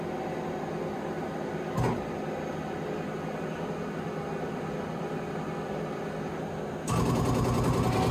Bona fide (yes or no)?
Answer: yes